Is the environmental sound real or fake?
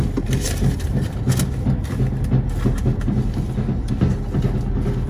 real